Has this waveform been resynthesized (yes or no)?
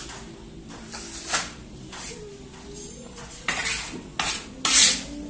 no